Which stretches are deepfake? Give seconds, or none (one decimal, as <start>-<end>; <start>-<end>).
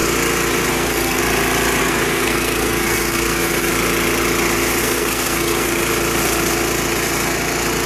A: 0.7-1.2; 1.8-3.7; 4.8-5.8